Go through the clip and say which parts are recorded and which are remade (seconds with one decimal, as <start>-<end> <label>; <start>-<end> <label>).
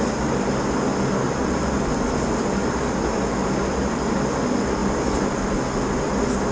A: 0.0-6.5 recorded